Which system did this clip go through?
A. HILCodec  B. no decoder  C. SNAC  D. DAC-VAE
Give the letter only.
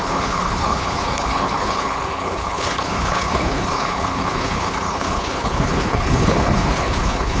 A